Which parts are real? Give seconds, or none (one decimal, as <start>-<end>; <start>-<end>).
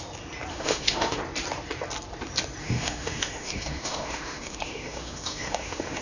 0.0-0.5; 1.2-2.6